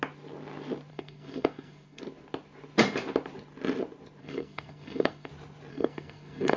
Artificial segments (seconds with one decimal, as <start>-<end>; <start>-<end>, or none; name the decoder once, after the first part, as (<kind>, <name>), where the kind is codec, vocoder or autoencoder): 0.9-2.0 (codec, SNAC); 4.2-5.3; 5.7-6.6